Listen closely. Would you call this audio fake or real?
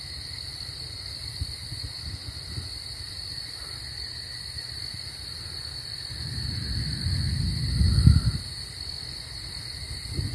real